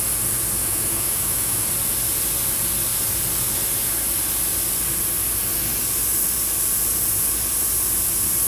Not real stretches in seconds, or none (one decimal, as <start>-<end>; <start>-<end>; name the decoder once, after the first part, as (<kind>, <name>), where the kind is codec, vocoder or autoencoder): 0.6-1.7 (autoencoder, DAC-VAE)